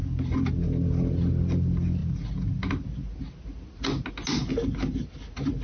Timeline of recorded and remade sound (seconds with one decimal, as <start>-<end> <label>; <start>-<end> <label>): 0.0-5.6 recorded